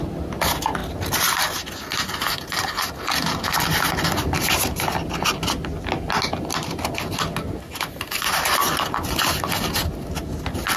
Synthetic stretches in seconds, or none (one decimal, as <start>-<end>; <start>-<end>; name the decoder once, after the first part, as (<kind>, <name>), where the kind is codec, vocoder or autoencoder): none